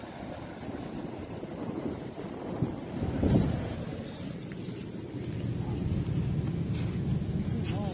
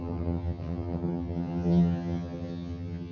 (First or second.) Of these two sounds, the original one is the first